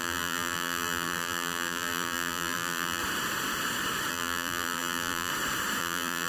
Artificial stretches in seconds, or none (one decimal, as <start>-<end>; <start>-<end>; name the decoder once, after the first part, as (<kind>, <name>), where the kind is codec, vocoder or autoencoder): 0.0-3.0 (vocoder, BigVGAN v2); 4.1-5.3; 5.8-6.3